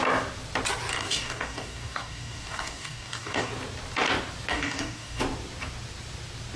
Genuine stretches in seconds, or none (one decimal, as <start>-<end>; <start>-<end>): 0.0-0.9; 3.5-4.5; 5.2-6.6